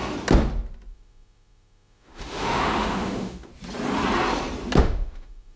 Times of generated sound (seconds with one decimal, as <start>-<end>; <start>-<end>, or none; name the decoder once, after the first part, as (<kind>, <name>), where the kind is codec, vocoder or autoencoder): 0.9-3.5 (autoencoder, DAC-VAE); 4.8-5.6

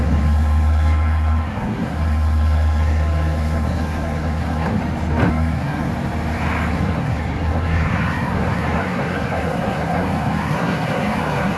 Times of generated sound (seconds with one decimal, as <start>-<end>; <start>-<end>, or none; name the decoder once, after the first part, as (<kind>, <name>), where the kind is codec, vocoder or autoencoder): 0.0-4.8 (codec, SNAC); 5.3-5.9; 6.7-11.6